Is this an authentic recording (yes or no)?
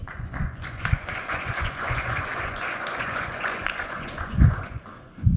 no